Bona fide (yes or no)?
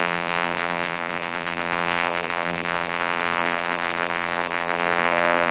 no